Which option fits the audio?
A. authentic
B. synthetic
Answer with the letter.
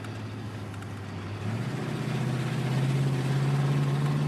A